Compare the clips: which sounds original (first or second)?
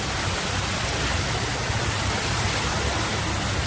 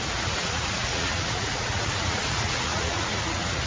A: first